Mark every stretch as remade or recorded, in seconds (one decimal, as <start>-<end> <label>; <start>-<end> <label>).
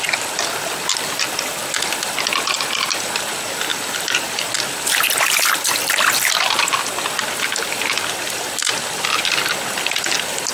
0.0-10.5 recorded